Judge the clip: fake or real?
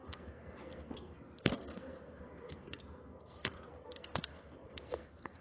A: fake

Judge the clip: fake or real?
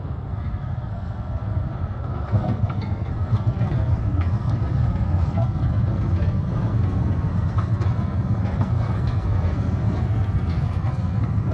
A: fake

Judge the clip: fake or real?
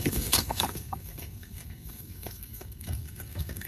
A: fake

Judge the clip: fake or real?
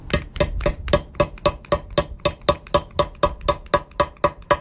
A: real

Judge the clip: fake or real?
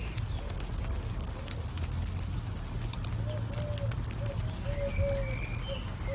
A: real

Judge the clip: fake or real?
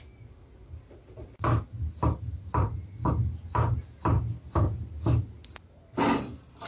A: real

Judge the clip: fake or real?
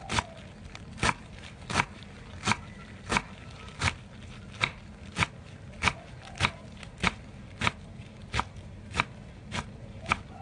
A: real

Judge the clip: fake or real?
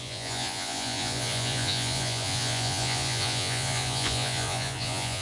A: fake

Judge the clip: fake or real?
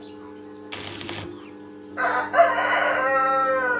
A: real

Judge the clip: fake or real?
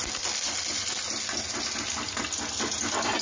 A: real